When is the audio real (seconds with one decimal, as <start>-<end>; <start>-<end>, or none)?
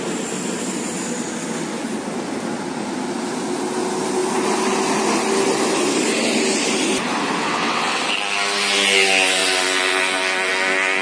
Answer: 0.0-7.4; 8.0-11.0